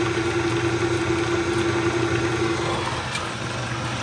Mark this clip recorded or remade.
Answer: recorded